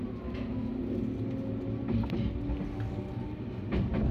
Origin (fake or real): real